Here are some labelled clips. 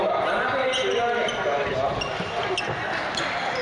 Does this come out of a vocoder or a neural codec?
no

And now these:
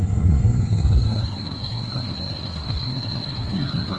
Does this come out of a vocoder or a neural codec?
yes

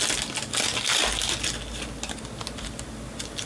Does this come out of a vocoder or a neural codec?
no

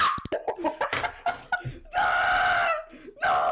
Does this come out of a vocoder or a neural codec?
no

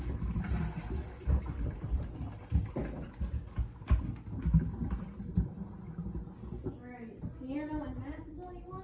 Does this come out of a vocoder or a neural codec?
no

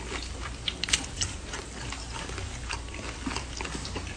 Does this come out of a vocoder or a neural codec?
yes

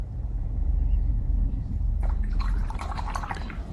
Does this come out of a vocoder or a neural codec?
yes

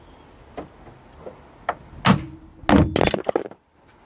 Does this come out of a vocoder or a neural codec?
no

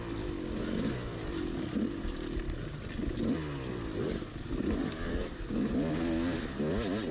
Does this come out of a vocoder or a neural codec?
no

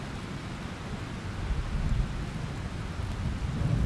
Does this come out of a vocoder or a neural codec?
no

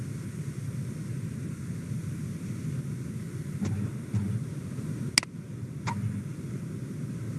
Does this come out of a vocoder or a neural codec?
no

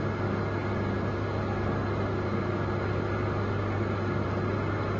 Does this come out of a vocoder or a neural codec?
no